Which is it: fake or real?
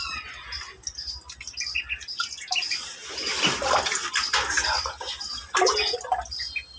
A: real